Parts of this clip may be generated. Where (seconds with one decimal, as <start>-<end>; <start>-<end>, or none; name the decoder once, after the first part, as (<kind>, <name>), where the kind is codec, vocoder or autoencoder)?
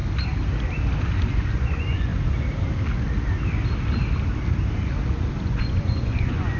1.3-2.1 (vocoder, Vocos); 5.4-6.6